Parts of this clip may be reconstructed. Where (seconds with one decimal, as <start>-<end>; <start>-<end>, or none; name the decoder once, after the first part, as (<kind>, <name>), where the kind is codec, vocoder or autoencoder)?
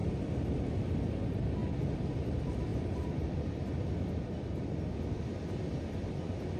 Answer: 2.7-3.7 (vocoder, BigVGAN v2)